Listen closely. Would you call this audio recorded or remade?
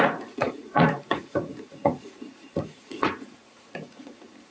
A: remade